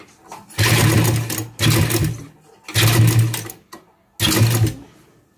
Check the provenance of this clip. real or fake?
real